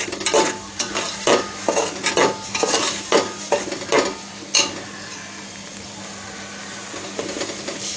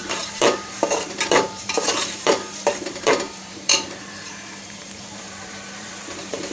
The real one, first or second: first